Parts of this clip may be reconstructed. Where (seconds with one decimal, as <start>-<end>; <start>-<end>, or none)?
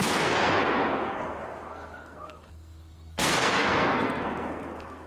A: 0.0-5.1